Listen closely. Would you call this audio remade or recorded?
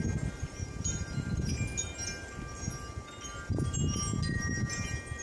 recorded